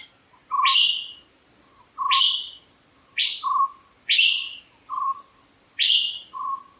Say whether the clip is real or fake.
fake